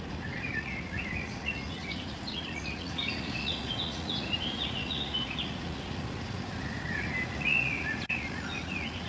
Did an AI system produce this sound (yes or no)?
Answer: yes